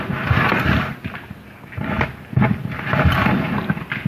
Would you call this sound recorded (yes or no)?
yes